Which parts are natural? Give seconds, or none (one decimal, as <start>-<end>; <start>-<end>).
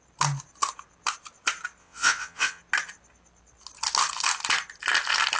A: 0.0-1.8; 2.6-5.4